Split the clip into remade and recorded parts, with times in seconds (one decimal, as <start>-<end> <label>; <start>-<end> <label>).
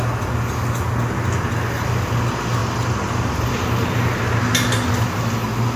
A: 0.0-2.6 recorded; 2.6-3.7 remade; 3.7-5.8 recorded